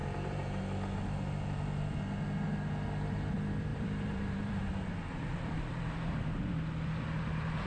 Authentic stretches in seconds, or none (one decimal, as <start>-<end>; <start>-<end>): 0.6-3.7; 4.6-7.7